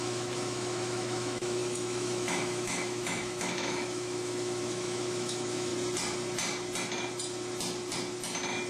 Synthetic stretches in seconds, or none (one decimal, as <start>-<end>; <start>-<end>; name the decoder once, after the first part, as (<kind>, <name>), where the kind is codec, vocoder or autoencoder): 0.0-5.7 (autoencoder, DAC-VAE)

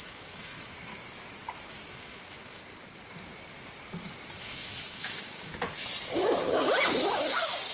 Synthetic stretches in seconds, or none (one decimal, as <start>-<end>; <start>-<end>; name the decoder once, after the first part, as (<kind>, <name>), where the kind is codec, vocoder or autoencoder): 0.0-0.9 (autoencoder, DAC-VAE); 1.7-2.6; 4.4-5.5

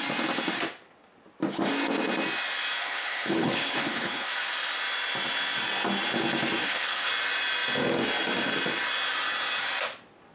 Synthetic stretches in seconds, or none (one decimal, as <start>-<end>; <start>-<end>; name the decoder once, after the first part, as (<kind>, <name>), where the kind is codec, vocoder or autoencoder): 2.8-4.3 (codec, HILCodec); 6.6-7.1

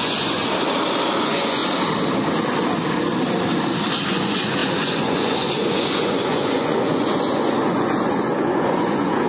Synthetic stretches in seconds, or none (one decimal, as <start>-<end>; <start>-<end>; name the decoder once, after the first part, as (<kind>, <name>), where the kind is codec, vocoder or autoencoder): 0.0-0.4 (vocoder, Vocos); 1.2-1.6; 4.1-9.3

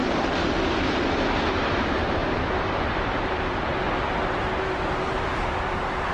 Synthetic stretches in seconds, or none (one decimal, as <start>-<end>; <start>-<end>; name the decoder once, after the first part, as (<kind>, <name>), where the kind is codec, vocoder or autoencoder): 0.9-2.2 (vocoder, BigVGAN v2); 3.1-3.7; 4.6-6.1